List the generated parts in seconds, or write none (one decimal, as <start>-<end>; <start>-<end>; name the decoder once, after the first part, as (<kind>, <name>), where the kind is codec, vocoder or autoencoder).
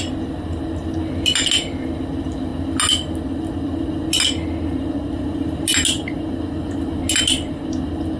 none